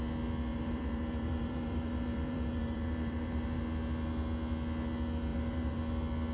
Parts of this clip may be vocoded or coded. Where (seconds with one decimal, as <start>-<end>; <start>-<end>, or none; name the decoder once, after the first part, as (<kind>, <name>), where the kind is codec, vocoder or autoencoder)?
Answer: 0.5-3.6 (vocoder, BigVGAN v2); 5.3-5.8